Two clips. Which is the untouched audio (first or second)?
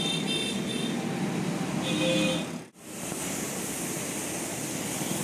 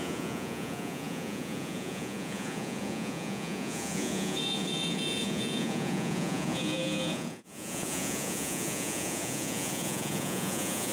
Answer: first